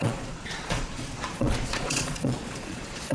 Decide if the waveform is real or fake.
fake